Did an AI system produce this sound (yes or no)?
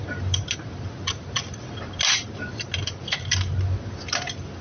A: no